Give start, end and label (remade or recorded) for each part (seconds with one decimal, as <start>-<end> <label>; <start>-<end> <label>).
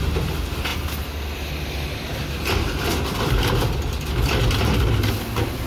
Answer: 0.0-5.7 recorded